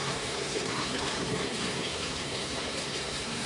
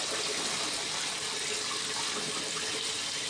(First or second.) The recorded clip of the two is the second